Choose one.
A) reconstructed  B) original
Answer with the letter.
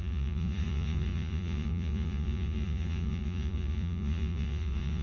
A